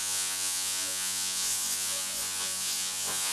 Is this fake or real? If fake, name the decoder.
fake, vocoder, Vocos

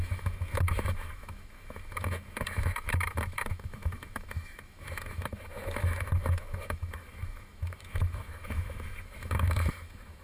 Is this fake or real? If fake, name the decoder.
fake, autoencoder, DAC-VAE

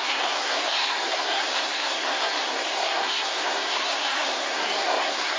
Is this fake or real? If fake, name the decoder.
fake, codec, SNAC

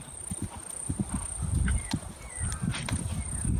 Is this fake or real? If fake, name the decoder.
real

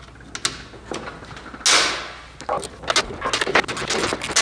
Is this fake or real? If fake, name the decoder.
real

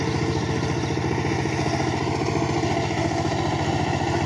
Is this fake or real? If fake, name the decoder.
real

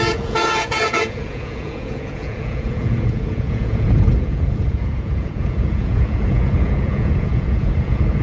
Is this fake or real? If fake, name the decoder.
fake, vocoder, Vocos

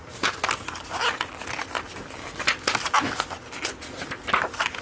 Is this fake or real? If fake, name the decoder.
real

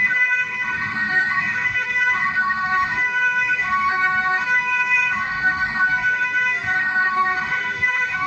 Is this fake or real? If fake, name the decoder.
fake, autoencoder, DAC-VAE